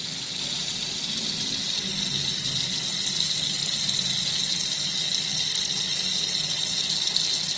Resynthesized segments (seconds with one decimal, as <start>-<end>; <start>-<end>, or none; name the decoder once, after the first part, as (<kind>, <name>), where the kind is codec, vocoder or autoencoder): none